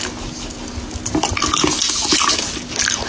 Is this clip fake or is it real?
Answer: real